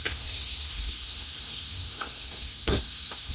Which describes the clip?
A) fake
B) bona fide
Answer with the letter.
A